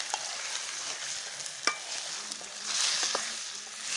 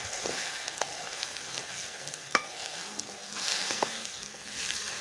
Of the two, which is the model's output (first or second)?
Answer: second